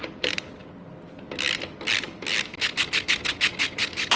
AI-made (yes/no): no